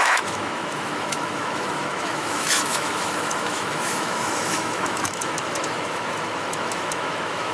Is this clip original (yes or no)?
no